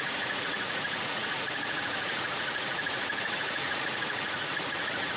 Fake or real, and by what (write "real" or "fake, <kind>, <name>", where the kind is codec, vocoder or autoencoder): fake, vocoder, Vocos